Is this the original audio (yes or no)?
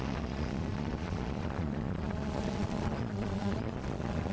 no